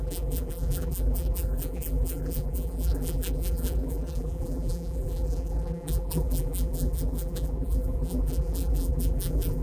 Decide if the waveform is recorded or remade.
remade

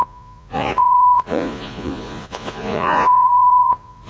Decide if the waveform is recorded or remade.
remade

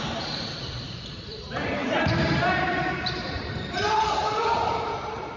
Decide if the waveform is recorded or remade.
remade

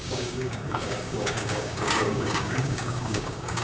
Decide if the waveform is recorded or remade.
remade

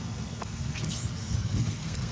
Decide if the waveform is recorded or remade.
remade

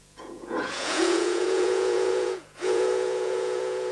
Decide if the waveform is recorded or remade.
remade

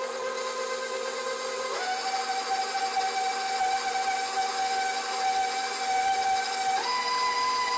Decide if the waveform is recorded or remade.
recorded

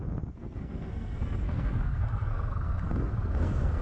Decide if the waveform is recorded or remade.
remade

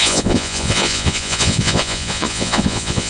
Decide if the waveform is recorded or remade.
remade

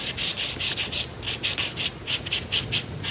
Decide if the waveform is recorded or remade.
recorded